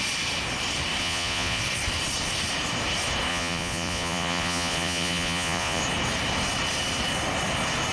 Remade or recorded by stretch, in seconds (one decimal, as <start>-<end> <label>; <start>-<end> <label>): 0.0-1.0 recorded; 1.0-1.6 remade; 1.6-3.3 recorded; 3.3-5.8 remade; 5.8-7.9 recorded